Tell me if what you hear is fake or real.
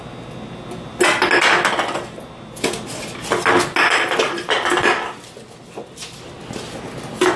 real